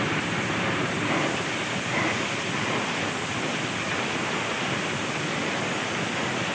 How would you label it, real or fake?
real